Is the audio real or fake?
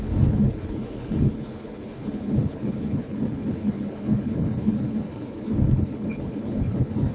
fake